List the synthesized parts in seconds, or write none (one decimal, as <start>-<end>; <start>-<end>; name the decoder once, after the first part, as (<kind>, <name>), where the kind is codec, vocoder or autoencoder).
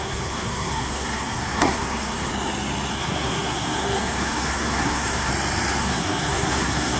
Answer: 0.0-2.3 (codec, SNAC); 2.9-5.3; 5.8-7.0